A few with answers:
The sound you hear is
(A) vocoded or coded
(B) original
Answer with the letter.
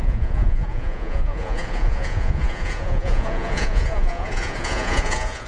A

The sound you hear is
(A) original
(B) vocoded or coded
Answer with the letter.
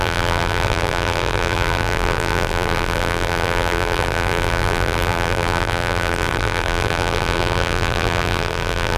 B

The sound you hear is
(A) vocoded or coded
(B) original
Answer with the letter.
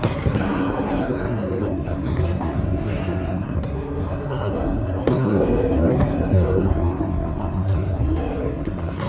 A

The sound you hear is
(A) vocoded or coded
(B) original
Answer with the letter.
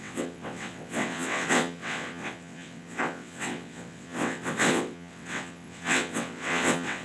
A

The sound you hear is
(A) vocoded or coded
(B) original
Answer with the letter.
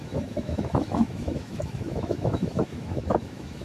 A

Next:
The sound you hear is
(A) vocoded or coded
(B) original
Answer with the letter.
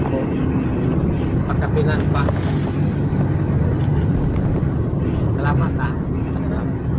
B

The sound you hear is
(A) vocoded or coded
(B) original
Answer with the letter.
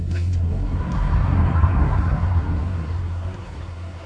A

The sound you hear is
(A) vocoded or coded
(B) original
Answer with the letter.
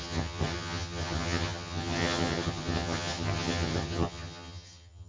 A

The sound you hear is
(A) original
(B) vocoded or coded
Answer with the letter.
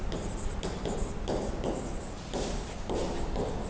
A